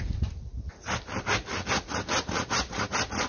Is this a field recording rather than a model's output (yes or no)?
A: yes